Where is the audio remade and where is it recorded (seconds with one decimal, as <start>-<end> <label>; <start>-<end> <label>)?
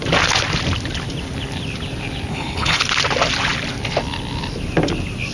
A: 0.0-2.3 recorded; 2.3-2.8 remade; 2.8-5.3 recorded